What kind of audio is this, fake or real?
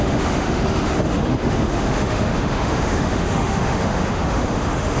fake